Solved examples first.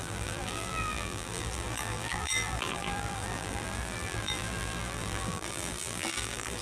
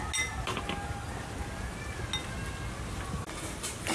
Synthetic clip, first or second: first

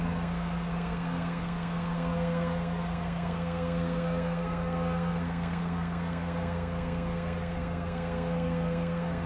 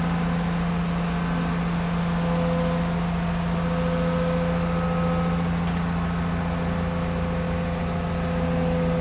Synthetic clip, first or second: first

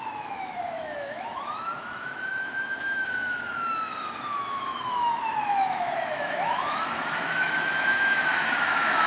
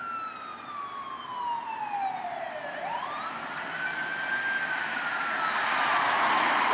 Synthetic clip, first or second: first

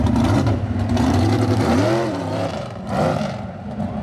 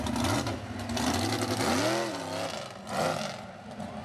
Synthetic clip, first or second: first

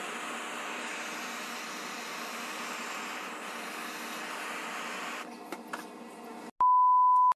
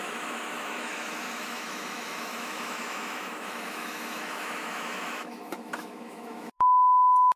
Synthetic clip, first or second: second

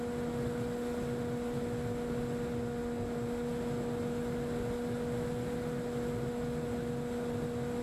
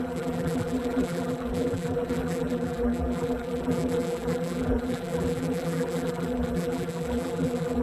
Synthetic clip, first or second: second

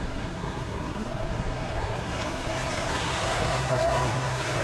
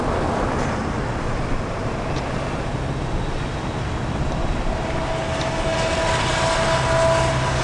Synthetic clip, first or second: first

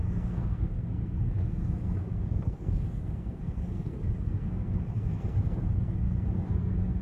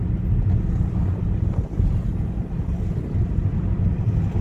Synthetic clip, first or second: first